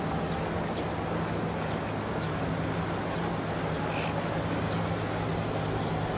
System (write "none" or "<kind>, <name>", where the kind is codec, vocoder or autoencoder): none